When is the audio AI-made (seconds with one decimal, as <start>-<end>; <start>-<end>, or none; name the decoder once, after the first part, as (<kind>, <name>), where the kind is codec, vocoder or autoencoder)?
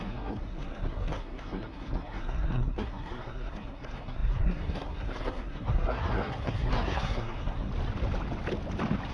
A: 0.0-7.7 (codec, SNAC)